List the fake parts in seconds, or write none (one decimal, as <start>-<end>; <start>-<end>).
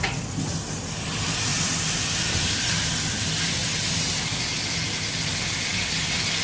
none